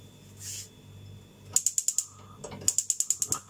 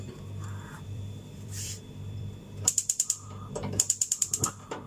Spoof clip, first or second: second